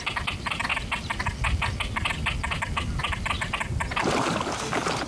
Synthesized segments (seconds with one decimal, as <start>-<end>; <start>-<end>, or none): none